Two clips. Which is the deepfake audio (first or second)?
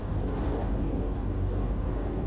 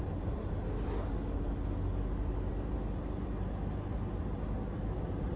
first